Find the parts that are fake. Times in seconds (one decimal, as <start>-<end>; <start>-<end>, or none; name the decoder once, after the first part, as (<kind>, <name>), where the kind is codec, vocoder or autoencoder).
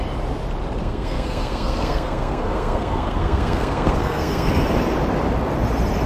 0.8-4.5 (codec, SNAC)